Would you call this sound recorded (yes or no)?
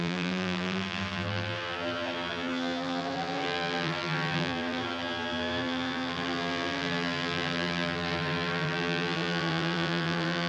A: no